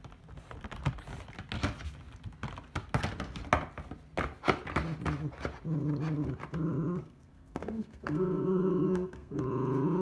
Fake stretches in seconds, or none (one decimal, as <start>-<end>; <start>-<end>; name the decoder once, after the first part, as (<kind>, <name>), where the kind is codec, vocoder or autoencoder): 7.0-9.4 (codec, SNAC)